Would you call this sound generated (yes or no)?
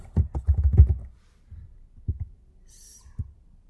no